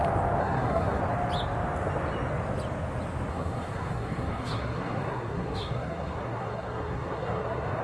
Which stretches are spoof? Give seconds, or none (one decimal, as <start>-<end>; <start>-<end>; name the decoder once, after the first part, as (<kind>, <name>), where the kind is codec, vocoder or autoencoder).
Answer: 0.4-1.0 (codec, SNAC); 3.3-7.8